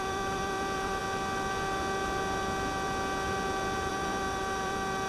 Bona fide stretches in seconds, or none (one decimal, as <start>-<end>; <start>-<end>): 1.0-3.9

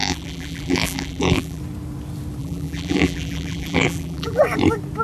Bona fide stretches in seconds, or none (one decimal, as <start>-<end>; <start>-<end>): 1.6-2.4; 4.4-5.0

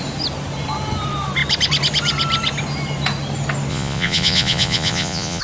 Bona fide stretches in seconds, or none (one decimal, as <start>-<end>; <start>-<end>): 0.0-3.7

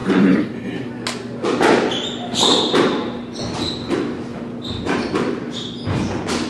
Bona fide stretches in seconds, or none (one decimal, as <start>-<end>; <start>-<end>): 0.0-6.5

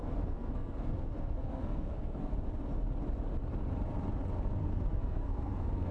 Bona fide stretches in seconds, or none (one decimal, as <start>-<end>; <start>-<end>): 2.3-4.6

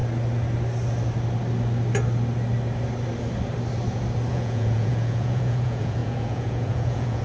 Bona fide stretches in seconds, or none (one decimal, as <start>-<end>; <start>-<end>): 0.0-4.3